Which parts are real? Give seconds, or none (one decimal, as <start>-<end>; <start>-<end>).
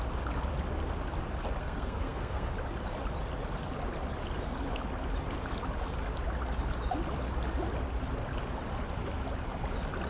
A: 0.0-1.6; 2.5-10.1